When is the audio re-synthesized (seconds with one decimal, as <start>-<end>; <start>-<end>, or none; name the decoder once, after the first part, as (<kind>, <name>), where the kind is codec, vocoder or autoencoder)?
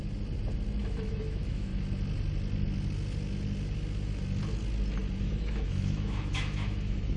0.8-1.7 (autoencoder, DAC-VAE); 5.2-7.2